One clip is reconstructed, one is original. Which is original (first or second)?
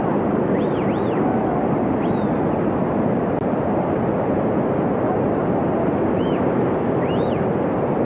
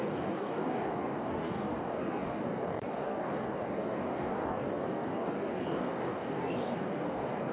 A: first